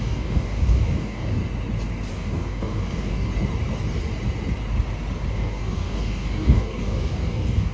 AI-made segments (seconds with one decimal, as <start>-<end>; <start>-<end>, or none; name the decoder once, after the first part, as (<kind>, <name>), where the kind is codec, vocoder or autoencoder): 0.0-1.4 (codec, DAC); 2.1-3.3; 5.3-7.7